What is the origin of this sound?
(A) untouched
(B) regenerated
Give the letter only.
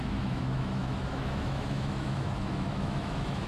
B